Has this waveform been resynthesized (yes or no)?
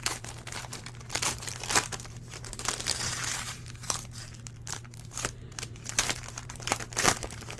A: yes